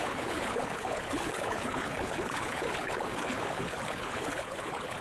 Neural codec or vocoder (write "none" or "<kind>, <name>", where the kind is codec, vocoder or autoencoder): codec, HILCodec